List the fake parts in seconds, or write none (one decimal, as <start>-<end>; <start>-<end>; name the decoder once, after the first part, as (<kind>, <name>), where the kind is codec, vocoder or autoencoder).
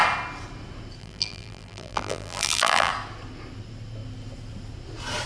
1.0-2.9 (vocoder, BigVGAN v2)